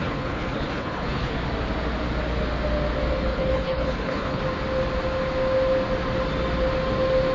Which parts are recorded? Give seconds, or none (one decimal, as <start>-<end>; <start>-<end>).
1.3-3.3; 4.4-7.3